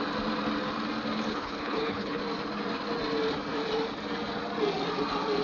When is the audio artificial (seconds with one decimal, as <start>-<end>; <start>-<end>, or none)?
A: 1.3-2.2